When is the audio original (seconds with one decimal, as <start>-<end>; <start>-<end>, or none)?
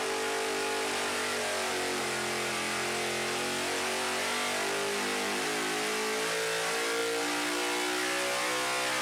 0.0-9.0